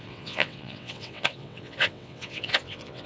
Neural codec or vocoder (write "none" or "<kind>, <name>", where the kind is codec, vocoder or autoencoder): vocoder, WaveNeXt